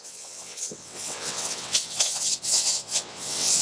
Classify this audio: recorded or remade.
remade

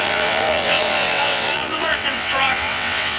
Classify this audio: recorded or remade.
remade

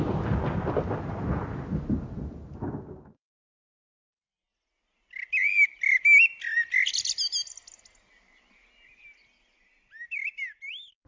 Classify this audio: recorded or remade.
recorded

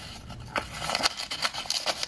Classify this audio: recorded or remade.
recorded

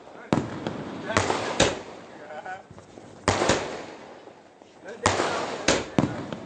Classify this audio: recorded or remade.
recorded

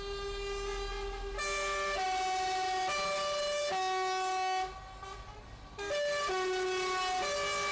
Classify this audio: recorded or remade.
recorded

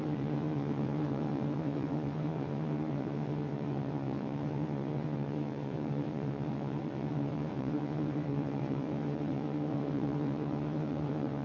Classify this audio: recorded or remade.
remade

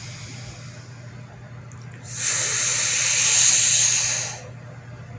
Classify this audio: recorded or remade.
recorded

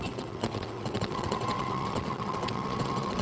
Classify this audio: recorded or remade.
remade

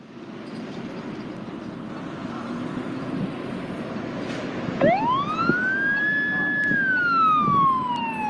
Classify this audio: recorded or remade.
recorded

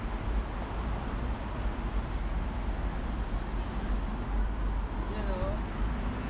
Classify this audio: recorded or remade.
recorded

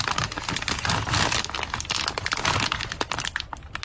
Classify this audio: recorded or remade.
recorded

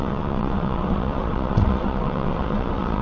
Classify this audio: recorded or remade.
remade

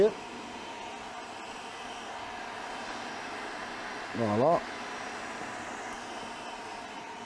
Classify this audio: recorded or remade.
recorded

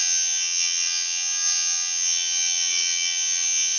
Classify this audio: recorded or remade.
remade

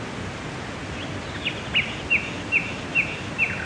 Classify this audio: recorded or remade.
recorded